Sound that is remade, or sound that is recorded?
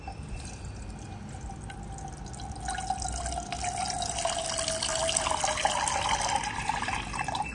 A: recorded